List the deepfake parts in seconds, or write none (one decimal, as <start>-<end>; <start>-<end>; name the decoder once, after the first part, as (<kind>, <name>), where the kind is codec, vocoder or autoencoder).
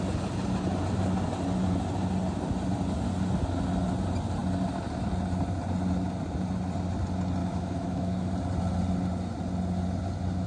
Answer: 7.4-8.3 (autoencoder, DAC-VAE)